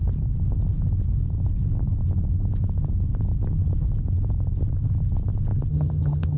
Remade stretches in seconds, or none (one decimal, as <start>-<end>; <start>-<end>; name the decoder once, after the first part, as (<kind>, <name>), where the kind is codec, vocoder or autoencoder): 5.7-6.4 (vocoder, HiFi-GAN)